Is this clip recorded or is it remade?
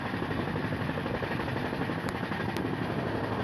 recorded